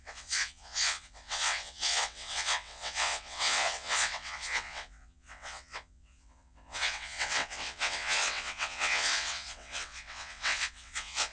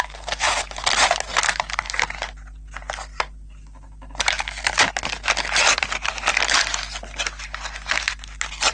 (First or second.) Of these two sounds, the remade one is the first